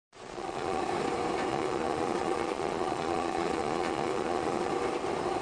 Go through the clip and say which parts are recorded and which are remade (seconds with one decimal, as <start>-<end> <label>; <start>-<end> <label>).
0.0-0.8 remade; 0.8-1.5 recorded; 1.5-4.7 remade; 4.7-5.4 recorded